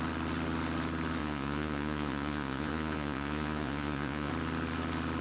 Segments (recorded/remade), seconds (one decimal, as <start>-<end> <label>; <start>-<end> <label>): 0.0-1.2 recorded; 1.2-4.3 remade; 4.3-5.2 recorded